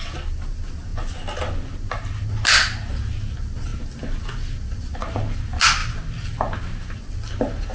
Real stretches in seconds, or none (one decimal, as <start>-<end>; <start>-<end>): 0.0-7.7